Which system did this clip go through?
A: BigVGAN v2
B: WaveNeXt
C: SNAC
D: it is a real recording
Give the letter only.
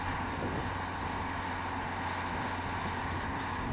D